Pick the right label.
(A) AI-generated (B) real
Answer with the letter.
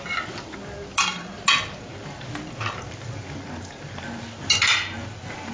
B